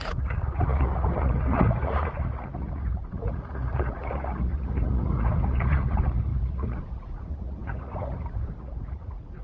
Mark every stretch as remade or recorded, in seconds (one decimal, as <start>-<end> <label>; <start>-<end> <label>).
0.0-9.4 remade